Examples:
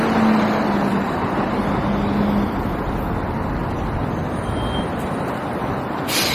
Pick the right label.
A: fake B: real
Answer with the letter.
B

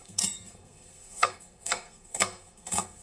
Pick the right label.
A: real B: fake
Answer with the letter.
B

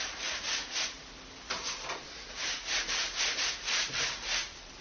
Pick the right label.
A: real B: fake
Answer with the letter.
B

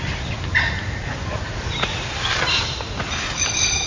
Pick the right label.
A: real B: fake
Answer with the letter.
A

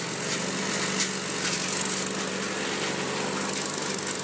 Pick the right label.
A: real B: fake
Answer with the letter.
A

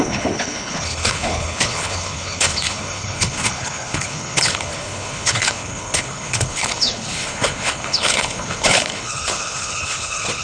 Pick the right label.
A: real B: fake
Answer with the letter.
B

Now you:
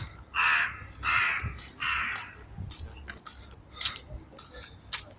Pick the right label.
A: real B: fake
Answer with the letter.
A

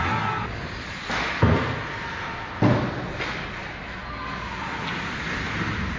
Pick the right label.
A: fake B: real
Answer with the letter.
B